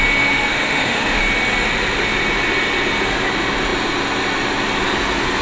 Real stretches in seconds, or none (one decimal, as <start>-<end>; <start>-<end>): 0.0-0.5; 1.2-5.4